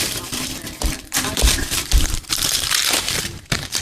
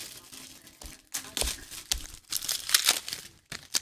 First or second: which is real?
second